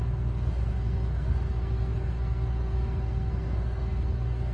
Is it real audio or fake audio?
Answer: fake